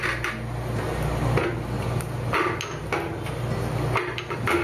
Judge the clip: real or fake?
real